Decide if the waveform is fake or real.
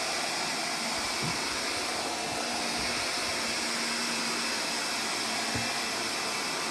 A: real